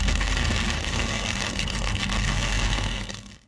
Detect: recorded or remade remade